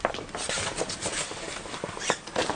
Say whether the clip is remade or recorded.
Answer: recorded